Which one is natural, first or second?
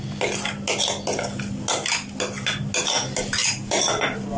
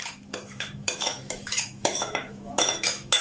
first